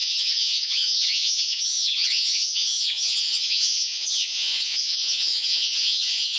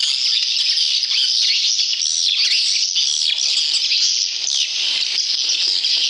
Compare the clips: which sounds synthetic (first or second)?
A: first